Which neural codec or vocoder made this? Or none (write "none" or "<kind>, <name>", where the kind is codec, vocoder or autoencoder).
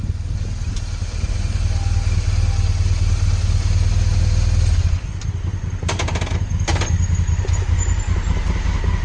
none